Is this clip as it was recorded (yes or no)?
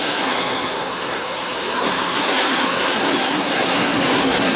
no